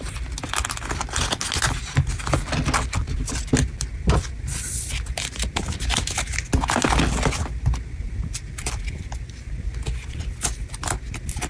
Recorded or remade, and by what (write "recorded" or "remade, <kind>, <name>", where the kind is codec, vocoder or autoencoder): recorded